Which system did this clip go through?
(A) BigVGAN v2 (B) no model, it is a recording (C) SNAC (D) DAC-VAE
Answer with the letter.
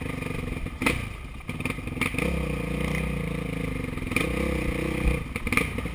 B